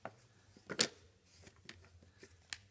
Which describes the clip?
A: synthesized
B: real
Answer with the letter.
B